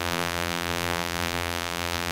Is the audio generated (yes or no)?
yes